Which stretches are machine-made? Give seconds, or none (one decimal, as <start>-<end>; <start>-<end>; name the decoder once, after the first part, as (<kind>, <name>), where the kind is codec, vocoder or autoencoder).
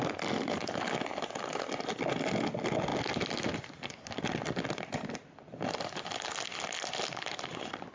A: 2.9-6.3 (vocoder, BigVGAN v2)